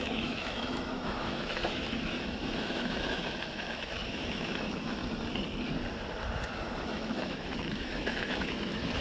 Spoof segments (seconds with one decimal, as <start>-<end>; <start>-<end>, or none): 0.0-5.0; 6.8-9.0